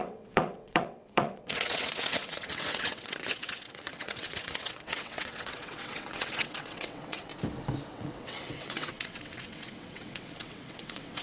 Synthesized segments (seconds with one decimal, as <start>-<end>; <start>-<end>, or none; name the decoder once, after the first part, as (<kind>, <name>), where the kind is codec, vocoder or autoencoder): 0.0-7.3 (vocoder, WaveNeXt); 7.9-11.2